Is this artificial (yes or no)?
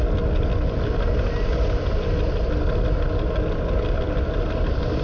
no